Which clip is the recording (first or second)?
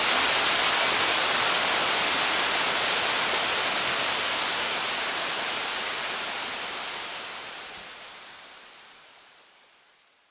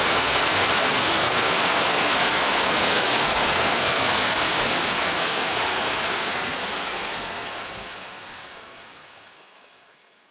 first